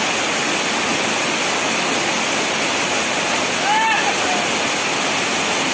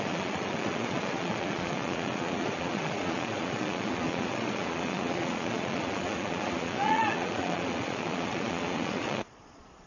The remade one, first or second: second